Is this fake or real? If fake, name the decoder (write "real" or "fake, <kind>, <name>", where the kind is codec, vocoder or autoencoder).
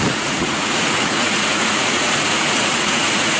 fake, vocoder, Vocos